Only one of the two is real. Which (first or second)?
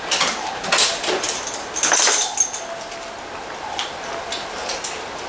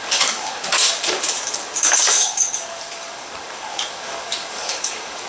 first